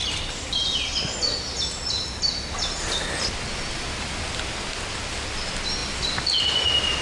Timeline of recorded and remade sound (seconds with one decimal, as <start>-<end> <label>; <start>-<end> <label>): 0.0-7.0 recorded